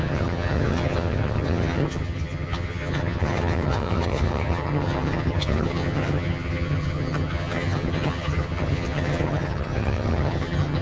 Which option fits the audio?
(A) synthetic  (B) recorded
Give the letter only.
A